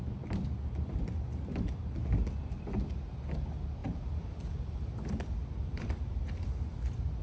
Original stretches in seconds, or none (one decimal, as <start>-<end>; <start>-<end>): 0.0-3.8; 4.4-5.4; 6.0-7.2